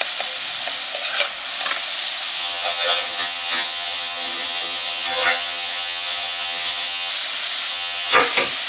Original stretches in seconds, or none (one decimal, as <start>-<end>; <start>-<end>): 0.0-2.4; 7.1-7.7; 8.2-8.7